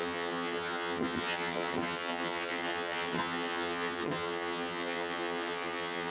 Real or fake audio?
fake